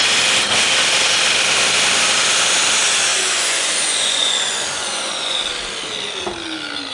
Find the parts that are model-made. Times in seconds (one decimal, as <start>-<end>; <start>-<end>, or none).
3.1-5.4